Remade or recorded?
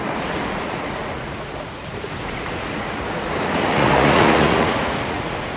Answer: remade